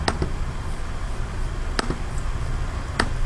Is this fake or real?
fake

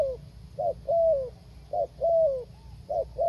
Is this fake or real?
real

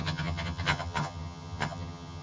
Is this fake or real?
fake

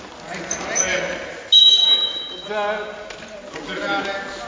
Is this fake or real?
real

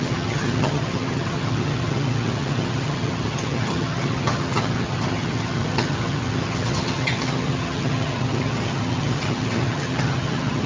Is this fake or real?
fake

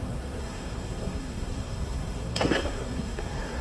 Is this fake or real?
fake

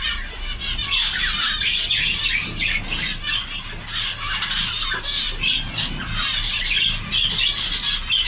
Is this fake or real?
real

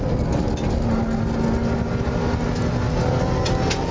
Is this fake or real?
real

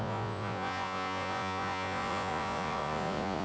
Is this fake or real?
fake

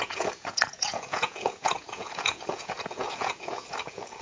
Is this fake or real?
fake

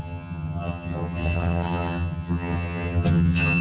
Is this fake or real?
fake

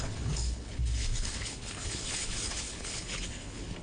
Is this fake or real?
fake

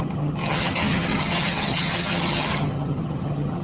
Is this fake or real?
fake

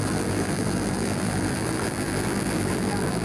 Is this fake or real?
fake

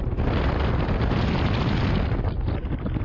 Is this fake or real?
real